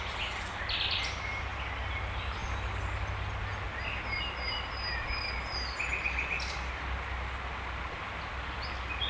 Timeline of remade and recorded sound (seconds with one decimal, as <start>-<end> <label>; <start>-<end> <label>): 0.0-9.1 recorded